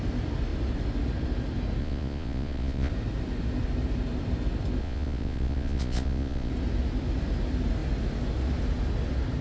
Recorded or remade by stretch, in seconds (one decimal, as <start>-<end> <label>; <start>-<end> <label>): 0.0-1.8 recorded; 1.8-2.9 remade; 2.9-4.8 recorded; 4.8-6.5 remade; 6.5-9.4 recorded